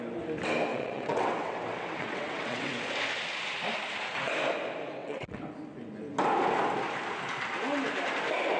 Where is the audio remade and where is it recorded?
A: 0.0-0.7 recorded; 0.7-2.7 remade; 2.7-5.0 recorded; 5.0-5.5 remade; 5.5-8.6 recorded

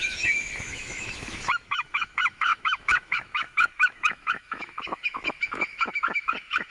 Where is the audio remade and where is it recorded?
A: 0.0-6.7 remade